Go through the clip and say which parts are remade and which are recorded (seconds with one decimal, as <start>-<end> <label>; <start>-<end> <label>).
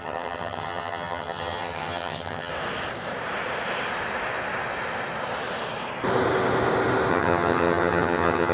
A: 0.0-2.5 remade; 2.5-7.1 recorded; 7.1-8.5 remade